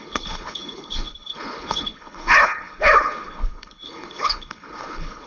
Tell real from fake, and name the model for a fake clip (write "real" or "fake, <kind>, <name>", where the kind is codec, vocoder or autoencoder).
fake, codec, HILCodec